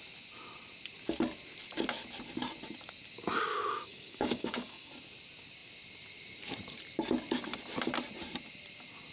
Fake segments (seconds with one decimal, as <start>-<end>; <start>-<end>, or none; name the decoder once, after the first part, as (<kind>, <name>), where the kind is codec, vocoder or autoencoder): 3.5-4.9 (codec, DAC)